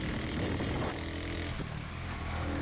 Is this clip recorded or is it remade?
recorded